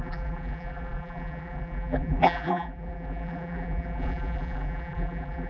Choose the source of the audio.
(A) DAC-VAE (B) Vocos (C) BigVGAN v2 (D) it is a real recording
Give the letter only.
C